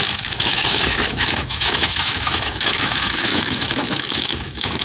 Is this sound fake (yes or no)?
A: yes